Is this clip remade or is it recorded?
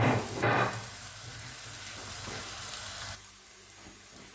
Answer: recorded